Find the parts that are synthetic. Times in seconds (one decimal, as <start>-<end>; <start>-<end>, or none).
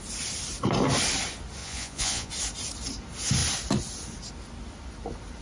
1.6-2.3